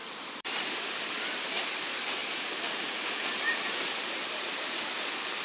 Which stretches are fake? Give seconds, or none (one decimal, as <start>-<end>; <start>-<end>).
0.0-1.6; 2.2-5.4